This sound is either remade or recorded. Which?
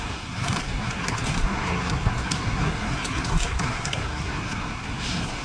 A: remade